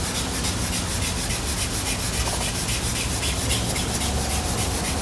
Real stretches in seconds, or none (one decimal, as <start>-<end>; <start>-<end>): 0.0-5.0